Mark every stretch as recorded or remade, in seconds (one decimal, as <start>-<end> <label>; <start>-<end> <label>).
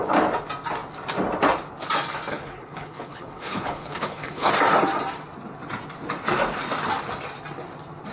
0.0-2.3 recorded; 2.3-4.5 remade; 4.5-8.1 recorded